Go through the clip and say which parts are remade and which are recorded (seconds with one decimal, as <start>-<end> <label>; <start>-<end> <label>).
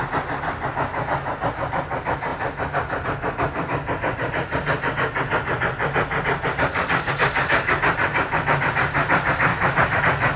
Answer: 0.0-9.5 recorded; 9.5-10.0 remade; 10.0-10.4 recorded